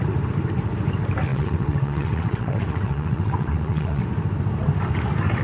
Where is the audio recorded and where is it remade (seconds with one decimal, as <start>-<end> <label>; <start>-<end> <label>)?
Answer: 0.0-1.3 recorded; 1.3-4.0 remade; 4.0-5.4 recorded